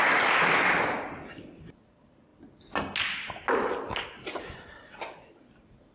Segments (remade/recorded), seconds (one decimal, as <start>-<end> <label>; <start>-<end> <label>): 0.0-5.9 recorded